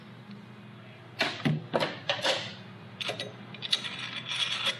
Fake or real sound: real